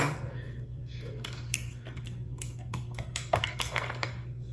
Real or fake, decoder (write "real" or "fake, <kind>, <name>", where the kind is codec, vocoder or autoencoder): fake, codec, SNAC